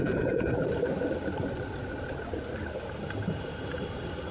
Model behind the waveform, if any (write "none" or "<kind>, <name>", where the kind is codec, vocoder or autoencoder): none